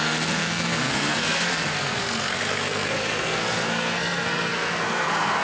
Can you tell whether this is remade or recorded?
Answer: remade